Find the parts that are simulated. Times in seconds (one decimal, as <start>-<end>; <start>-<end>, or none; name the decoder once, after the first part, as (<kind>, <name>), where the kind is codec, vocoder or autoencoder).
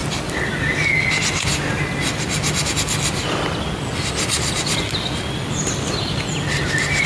none